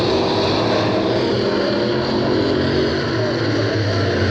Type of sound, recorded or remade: recorded